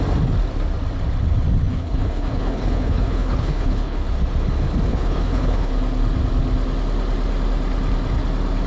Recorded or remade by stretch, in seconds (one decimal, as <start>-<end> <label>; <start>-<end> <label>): 0.0-1.7 recorded; 1.7-4.1 remade; 4.1-4.9 recorded; 4.9-5.7 remade; 5.7-8.7 recorded